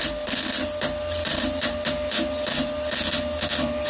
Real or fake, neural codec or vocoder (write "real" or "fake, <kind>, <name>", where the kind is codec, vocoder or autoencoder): real